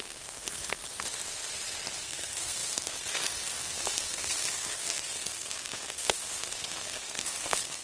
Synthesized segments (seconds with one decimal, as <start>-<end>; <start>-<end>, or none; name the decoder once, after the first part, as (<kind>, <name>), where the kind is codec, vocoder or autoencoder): 0.0-0.8 (codec, SNAC); 2.0-7.8